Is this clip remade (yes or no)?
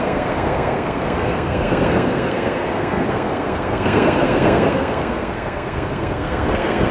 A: yes